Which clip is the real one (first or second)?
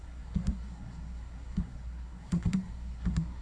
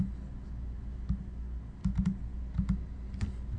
second